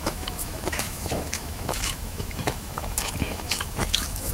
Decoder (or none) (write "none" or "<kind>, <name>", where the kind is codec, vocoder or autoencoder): autoencoder, DAC-VAE